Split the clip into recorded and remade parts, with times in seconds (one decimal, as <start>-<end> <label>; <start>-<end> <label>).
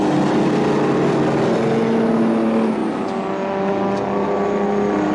0.0-5.1 recorded